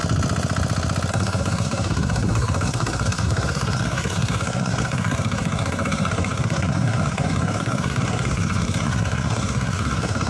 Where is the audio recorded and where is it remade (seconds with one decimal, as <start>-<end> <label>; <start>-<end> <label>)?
0.0-1.1 recorded; 1.1-10.3 remade